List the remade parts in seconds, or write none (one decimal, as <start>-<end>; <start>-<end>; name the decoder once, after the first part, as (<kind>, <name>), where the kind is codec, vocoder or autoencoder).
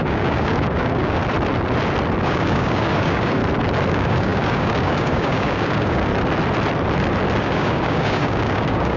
0.0-1.2 (codec, DAC); 2.2-3.4; 3.9-6.1; 7.4-9.0